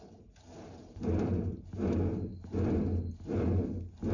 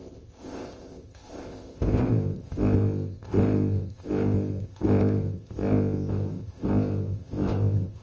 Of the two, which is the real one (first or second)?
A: first